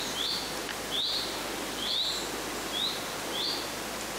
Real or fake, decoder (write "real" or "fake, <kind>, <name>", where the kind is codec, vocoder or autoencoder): real